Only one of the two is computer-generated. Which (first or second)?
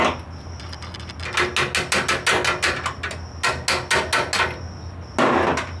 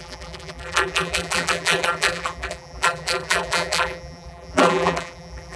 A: second